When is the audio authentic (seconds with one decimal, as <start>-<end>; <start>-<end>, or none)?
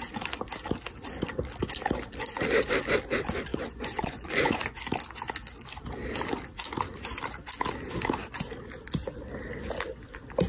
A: 0.0-3.5; 4.8-10.5